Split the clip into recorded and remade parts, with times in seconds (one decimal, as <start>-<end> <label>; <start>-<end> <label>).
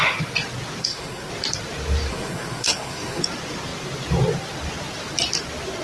0.0-0.8 recorded; 0.8-1.3 remade; 1.3-2.1 recorded; 2.1-3.2 remade; 3.2-5.8 recorded